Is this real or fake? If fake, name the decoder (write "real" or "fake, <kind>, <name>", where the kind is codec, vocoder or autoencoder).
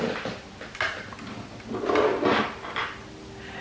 real